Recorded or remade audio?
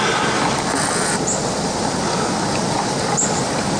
recorded